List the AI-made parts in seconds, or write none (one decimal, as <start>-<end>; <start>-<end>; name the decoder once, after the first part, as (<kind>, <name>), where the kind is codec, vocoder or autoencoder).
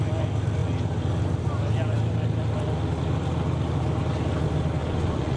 4.8-5.4 (vocoder, Vocos)